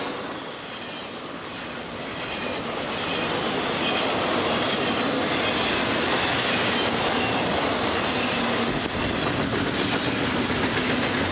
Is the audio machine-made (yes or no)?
no